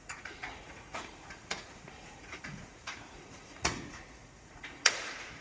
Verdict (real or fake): fake